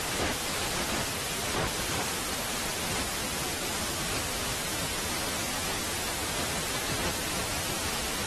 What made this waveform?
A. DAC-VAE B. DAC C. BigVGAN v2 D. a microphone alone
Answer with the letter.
C